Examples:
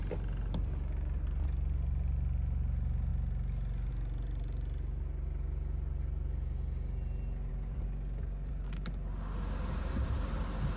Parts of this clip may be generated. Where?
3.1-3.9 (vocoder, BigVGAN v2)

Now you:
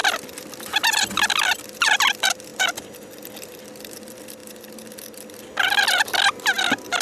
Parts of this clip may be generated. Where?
1.6-2.5 (vocoder, BigVGAN v2); 3.4-7.0

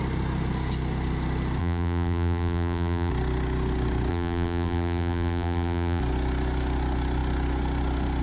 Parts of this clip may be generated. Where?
1.6-3.1 (vocoder, BigVGAN v2); 4.1-6.0

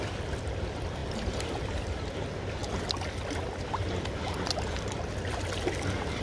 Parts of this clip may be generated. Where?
1.0-2.1 (vocoder, BigVGAN v2)

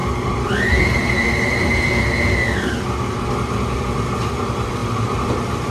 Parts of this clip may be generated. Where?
4.8-5.3 (vocoder, BigVGAN v2)

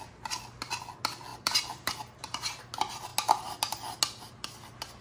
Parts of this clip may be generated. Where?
1.3-2.6 (vocoder, BigVGAN v2)

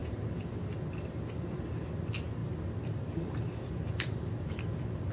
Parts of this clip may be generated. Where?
0.0-0.7 (vocoder, BigVGAN v2); 2.4-5.1

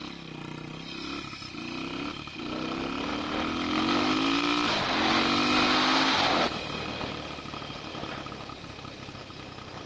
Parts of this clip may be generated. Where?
none